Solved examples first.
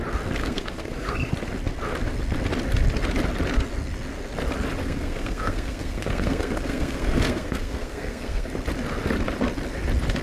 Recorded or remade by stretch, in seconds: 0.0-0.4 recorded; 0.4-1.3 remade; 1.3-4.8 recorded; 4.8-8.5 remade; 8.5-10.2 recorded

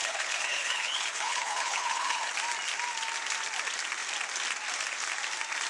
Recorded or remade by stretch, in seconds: 0.0-2.3 remade; 2.3-5.7 recorded

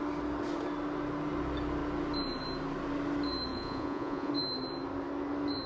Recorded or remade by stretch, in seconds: 0.0-3.5 recorded; 3.5-4.3 remade; 4.3-5.7 recorded

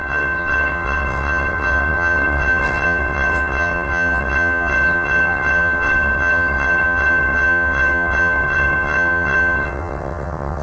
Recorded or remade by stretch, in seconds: 0.0-10.6 remade

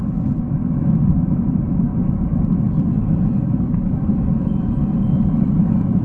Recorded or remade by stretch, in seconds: 0.0-1.9 remade; 1.9-3.2 recorded; 3.2-4.8 remade; 4.8-5.6 recorded; 5.6-6.0 remade